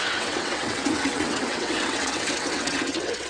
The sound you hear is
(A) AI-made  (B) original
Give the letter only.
A